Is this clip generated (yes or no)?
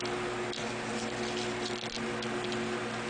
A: no